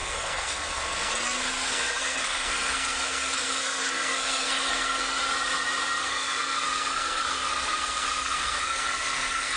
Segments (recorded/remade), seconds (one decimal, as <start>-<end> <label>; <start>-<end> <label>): 0.0-5.2 remade; 5.2-6.0 recorded; 6.0-9.6 remade